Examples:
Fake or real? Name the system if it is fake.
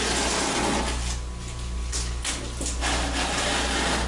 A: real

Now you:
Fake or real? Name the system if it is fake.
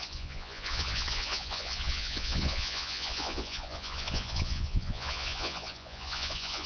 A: fake, vocoder, Vocos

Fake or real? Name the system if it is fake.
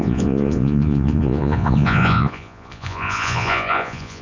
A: fake, vocoder, Vocos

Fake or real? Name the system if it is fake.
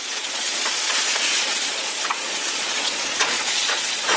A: fake, vocoder, Vocos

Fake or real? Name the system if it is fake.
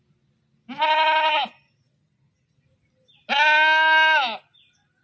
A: real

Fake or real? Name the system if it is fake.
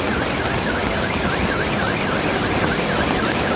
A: real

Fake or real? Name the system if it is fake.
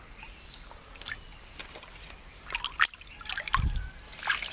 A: real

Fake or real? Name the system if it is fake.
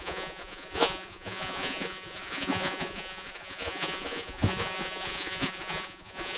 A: fake, vocoder, Vocos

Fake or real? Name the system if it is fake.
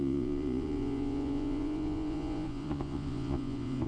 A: fake, vocoder, Vocos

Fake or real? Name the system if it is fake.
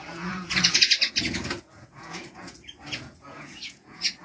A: fake, vocoder, Vocos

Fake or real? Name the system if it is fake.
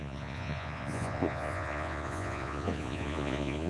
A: fake, vocoder, Vocos